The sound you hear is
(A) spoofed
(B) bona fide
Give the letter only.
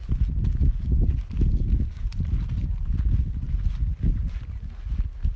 B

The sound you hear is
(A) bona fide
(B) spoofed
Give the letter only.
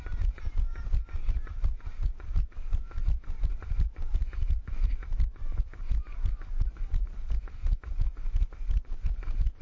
A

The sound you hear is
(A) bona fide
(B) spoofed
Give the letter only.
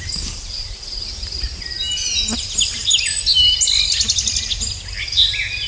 A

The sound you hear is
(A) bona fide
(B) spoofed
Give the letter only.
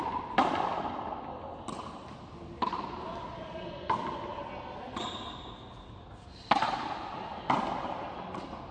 A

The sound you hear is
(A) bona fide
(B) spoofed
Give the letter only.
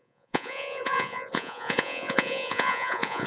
B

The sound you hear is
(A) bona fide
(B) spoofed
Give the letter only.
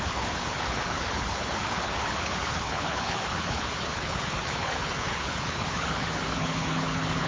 B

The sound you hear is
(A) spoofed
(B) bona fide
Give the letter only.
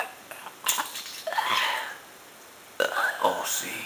B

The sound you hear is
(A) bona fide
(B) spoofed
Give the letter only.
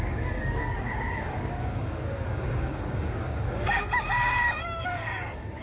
B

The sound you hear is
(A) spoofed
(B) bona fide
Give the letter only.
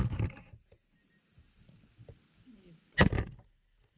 B